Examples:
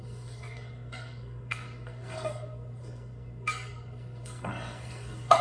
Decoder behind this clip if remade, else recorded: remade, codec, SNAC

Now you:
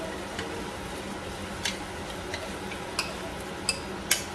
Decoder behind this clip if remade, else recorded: recorded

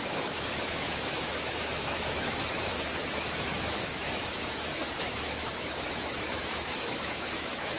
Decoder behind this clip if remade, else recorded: remade, autoencoder, DAC-VAE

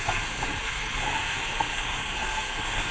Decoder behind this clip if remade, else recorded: remade, codec, SNAC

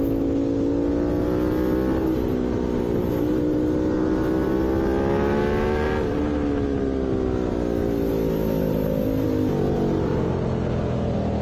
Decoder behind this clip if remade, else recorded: recorded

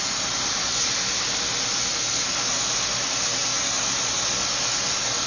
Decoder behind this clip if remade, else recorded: recorded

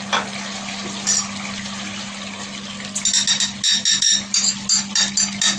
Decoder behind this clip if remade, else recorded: recorded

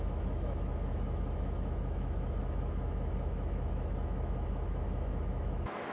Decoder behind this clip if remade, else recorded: remade, autoencoder, DAC-VAE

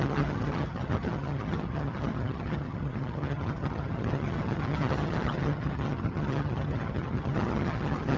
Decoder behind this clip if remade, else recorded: remade, vocoder, HiFi-GAN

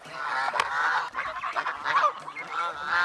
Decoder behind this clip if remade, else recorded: recorded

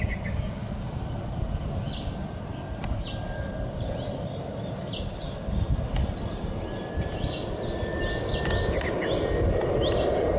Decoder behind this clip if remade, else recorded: recorded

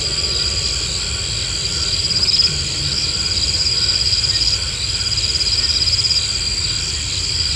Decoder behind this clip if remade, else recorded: recorded